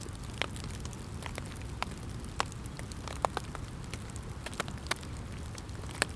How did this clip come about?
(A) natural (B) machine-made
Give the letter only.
A